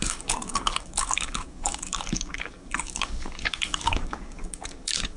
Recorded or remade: remade